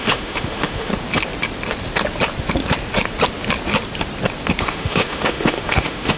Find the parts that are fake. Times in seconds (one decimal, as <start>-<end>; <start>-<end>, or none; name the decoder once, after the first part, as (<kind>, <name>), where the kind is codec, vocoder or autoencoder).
0.0-0.9 (autoencoder, DAC-VAE); 4.6-6.2